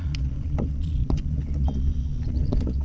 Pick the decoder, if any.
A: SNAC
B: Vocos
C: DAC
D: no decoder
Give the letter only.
B